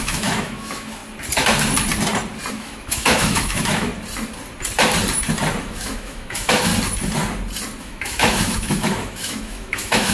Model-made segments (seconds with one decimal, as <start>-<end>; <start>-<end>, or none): 0.0-1.0; 2.5-3.9; 5.6-6.7; 7.8-10.1